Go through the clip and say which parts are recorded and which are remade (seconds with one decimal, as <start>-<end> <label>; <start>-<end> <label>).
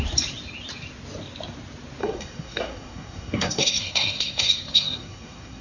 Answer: 0.0-2.0 recorded; 2.0-5.6 remade